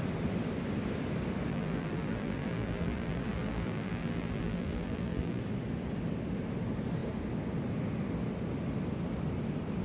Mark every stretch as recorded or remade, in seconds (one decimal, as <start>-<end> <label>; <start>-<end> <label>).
0.0-1.5 recorded; 1.5-5.4 remade; 5.4-9.8 recorded

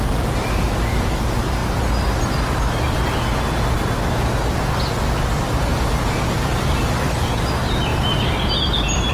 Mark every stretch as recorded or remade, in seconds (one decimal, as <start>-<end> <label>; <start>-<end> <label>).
0.0-9.1 recorded

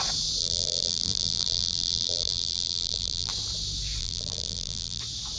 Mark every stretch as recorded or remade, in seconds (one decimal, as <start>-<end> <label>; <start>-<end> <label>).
0.0-0.4 recorded; 0.4-3.3 remade; 3.3-4.0 recorded; 4.0-5.0 remade; 5.0-5.4 recorded

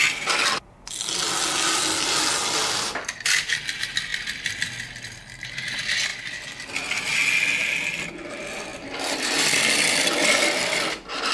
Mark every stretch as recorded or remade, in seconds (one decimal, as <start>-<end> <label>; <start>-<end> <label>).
0.0-4.1 recorded; 4.1-4.8 remade; 4.8-6.1 recorded; 6.1-6.7 remade; 6.7-8.7 recorded; 8.7-11.3 remade

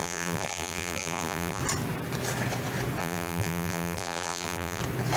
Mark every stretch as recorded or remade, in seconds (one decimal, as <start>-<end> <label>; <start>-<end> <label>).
0.0-1.6 remade; 1.6-3.0 recorded; 3.0-4.8 remade; 4.8-5.2 recorded

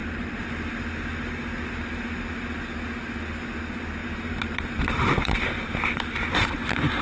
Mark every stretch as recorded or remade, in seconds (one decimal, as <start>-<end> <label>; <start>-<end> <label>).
0.0-4.0 recorded; 4.0-6.0 remade; 6.0-7.0 recorded